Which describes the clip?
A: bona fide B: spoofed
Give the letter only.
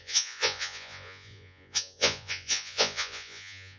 B